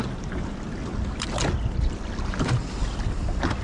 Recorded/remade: recorded